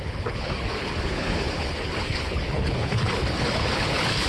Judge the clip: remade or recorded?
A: remade